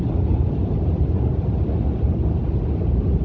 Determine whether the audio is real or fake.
real